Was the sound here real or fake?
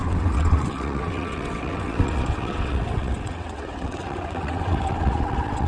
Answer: fake